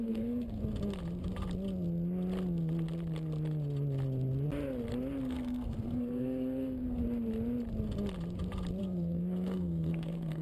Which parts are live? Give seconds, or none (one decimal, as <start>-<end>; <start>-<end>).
0.6-5.2; 7.0-8.8